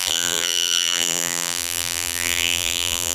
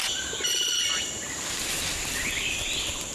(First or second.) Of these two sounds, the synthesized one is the first